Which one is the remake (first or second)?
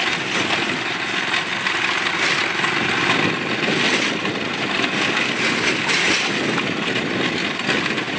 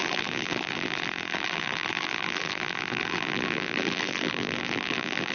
second